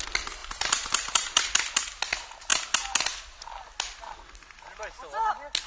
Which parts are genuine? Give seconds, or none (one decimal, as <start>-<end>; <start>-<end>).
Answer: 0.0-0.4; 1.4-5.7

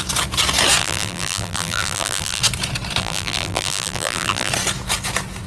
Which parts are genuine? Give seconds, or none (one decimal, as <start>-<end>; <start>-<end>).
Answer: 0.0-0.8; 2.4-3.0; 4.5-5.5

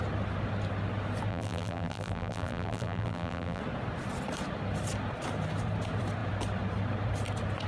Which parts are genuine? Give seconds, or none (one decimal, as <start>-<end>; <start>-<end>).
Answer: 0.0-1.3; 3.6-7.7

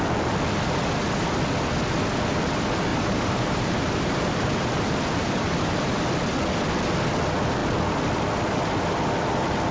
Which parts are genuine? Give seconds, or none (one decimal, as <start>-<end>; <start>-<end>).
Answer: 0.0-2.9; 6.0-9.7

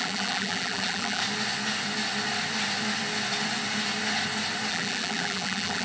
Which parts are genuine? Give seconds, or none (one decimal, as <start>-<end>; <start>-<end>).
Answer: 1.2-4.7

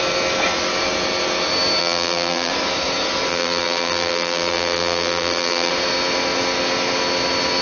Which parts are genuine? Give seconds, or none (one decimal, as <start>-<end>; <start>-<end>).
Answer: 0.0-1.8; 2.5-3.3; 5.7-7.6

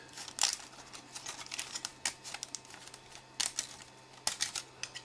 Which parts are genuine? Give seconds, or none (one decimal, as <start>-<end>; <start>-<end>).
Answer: 0.0-5.0

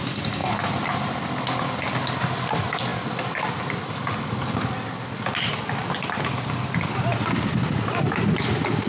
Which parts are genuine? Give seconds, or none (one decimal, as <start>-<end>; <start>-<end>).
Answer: 0.0-8.9